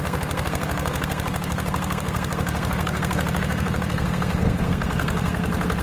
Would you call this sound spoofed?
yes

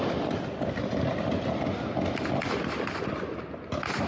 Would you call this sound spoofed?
no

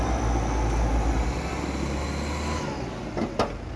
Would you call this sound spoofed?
no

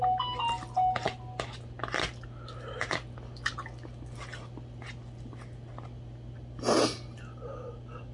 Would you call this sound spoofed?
no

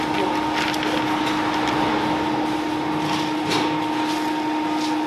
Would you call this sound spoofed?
no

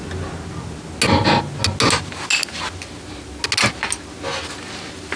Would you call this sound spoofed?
no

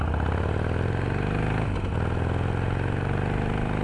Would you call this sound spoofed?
no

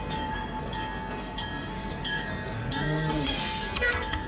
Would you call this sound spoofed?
yes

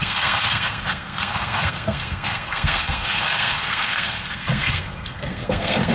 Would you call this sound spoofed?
yes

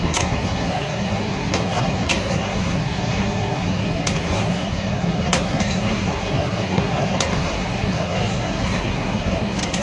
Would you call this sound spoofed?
yes